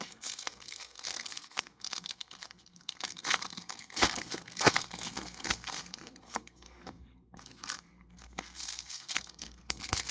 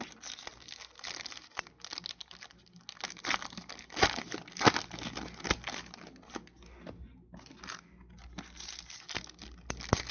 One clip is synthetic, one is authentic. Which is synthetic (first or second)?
first